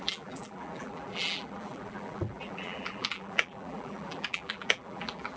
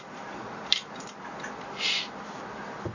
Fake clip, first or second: first